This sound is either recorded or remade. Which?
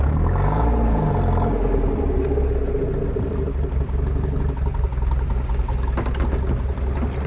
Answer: recorded